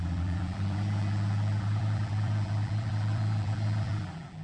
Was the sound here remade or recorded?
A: remade